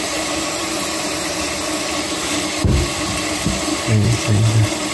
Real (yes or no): yes